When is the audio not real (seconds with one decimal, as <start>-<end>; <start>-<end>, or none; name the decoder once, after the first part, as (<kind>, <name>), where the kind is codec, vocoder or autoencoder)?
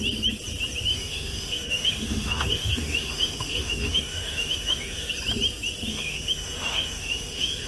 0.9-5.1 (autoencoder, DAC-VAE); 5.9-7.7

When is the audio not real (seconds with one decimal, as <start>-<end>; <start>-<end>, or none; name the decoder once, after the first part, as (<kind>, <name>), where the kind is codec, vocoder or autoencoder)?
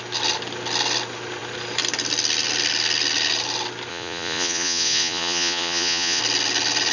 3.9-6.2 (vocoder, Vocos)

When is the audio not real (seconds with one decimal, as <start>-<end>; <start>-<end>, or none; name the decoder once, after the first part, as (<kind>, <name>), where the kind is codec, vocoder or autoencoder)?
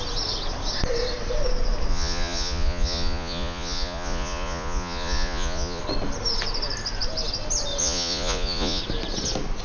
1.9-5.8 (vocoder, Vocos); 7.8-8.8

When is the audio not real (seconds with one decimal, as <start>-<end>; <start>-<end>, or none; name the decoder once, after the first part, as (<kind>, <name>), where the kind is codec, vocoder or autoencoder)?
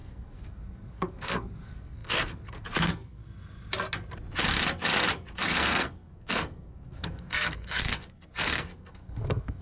0.0-3.2 (codec, SNAC); 5.4-9.6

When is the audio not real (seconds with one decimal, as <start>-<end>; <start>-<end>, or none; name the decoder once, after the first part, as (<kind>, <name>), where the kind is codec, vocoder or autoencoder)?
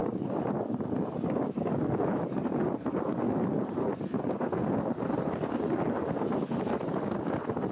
none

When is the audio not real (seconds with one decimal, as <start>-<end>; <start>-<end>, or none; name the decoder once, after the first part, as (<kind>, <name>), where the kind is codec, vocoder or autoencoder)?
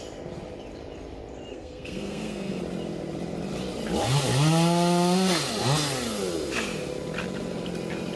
1.5-2.6 (codec, SNAC)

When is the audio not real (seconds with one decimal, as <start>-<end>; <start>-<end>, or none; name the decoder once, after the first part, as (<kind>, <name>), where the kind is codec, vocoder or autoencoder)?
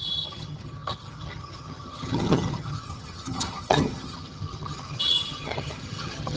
0.0-6.4 (vocoder, HiFi-GAN)